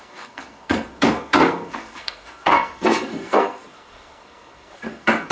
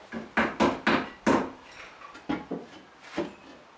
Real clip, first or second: second